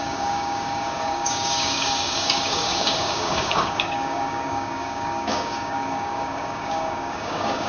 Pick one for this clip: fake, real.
fake